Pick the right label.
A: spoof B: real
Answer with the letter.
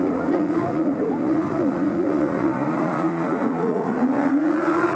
A